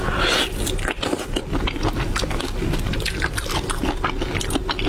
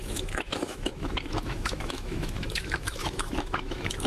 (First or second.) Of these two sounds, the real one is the first